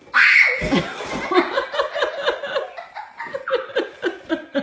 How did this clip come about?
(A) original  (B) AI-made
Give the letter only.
A